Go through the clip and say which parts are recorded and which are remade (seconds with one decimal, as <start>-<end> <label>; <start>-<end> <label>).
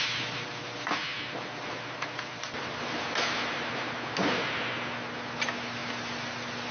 0.0-6.7 recorded